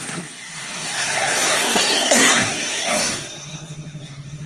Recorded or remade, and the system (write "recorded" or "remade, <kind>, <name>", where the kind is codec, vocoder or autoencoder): remade, codec, SNAC